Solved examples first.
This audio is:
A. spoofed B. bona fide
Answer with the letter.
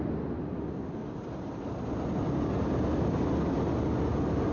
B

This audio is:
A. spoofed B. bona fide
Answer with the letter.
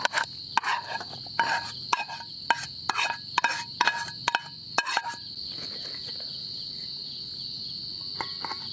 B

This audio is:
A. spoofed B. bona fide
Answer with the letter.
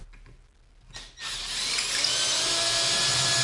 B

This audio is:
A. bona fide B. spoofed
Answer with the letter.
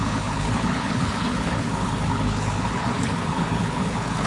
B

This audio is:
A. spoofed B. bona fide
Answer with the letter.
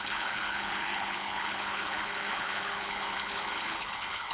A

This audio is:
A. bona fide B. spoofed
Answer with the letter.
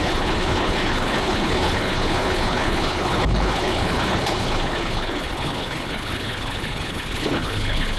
B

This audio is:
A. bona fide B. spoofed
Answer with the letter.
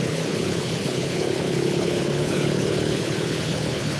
B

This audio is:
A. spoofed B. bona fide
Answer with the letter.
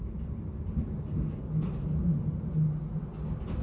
B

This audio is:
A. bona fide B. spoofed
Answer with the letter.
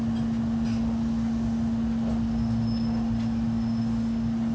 A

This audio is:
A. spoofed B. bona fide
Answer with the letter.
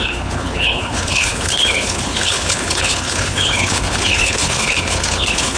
A